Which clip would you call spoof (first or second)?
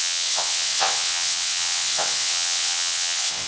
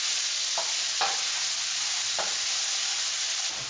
first